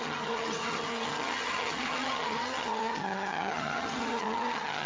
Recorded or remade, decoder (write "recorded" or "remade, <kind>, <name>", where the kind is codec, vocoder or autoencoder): remade, vocoder, HiFi-GAN